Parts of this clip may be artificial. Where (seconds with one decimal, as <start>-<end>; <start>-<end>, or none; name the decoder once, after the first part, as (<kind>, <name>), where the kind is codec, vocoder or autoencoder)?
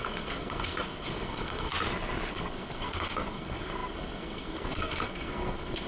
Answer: 0.0-1.7 (codec, SNAC); 2.3-5.9